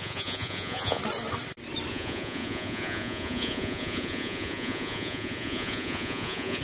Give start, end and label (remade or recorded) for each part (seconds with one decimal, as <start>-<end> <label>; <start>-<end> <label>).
0.0-1.0 remade; 1.0-1.9 recorded; 1.9-6.6 remade